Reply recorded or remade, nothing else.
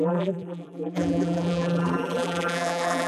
remade